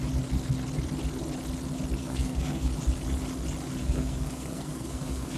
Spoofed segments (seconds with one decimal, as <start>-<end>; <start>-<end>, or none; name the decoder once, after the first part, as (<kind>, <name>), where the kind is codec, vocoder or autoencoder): 2.0-2.7 (codec, SNAC); 3.8-5.4